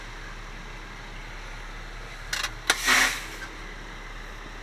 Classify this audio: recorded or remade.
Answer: recorded